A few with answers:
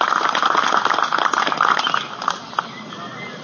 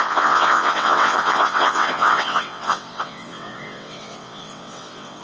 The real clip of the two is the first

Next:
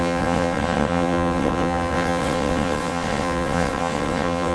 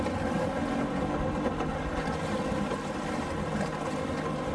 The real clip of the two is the second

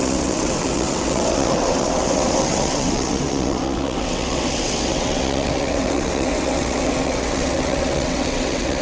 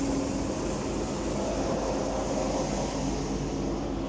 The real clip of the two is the second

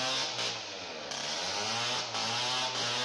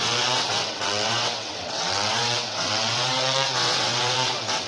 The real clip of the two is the first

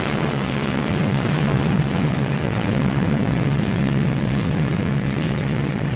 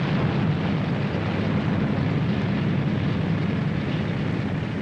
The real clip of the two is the second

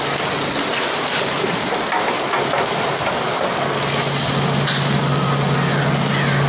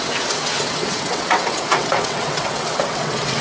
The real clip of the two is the first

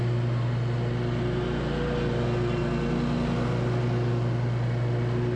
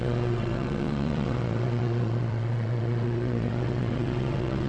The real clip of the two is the first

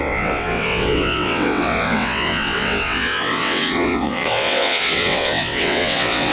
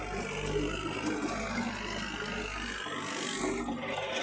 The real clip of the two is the second